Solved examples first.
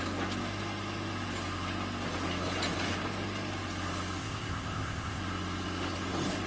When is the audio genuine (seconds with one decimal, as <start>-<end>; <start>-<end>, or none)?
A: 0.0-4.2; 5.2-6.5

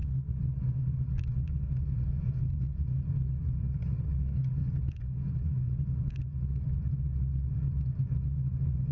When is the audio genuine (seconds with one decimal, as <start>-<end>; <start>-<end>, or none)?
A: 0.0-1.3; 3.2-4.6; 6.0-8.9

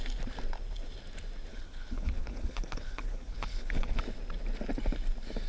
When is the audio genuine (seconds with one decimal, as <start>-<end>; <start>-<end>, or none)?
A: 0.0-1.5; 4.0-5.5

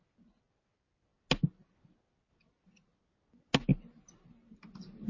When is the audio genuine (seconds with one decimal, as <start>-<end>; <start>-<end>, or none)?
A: 0.0-5.1

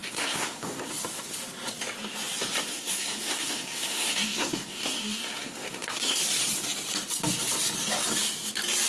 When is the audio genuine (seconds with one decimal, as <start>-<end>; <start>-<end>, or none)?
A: 0.9-2.7; 6.2-8.9

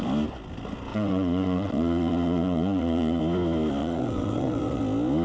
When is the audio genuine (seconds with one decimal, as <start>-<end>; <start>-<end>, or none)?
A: 0.0-0.9; 3.2-3.8; 4.8-5.2

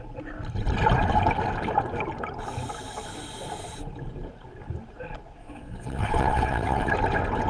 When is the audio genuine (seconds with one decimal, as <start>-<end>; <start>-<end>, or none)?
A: 0.0-5.4; 6.9-7.5

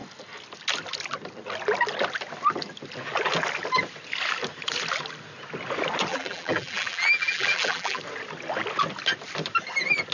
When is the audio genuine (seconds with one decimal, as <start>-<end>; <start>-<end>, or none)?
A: 0.0-6.1; 8.0-10.1